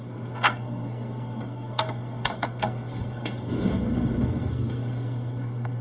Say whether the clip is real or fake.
fake